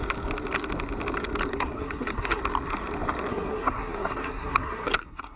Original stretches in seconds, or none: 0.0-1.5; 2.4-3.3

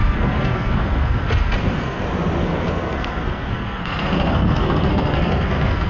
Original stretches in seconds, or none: 2.0-2.4

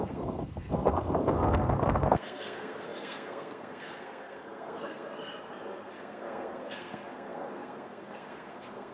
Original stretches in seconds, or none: none

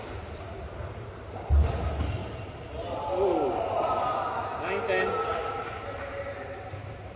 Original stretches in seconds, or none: 0.0-7.2

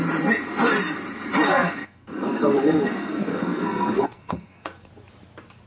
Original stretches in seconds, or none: 0.0-1.5; 4.9-5.7

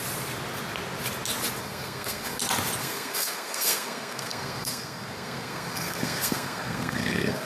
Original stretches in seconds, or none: 0.0-1.6; 2.4-2.8